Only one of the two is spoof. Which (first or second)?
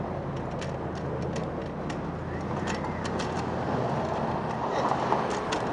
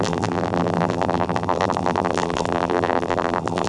second